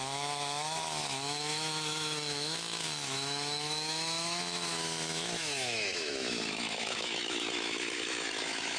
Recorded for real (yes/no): no